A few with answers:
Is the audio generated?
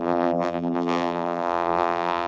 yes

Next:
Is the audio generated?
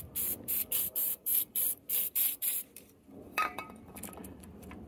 yes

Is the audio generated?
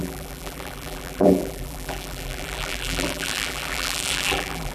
yes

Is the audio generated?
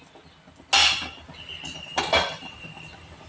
no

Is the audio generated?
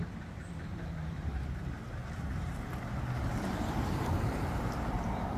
yes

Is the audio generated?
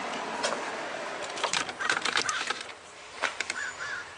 yes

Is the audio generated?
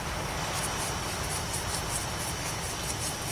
no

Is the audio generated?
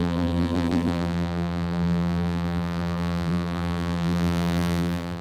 yes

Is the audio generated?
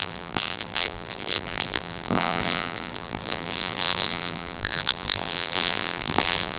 yes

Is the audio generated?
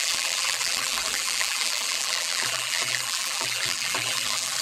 yes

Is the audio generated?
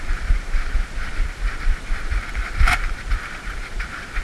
yes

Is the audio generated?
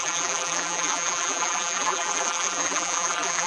yes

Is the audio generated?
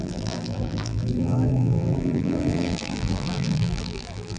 yes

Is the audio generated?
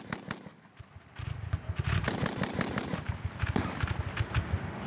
no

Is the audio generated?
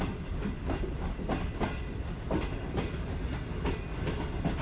no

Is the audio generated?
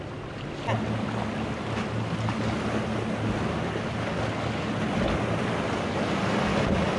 no